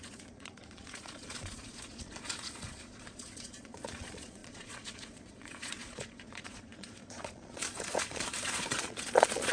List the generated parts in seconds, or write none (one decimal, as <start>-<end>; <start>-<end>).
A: 0.0-9.5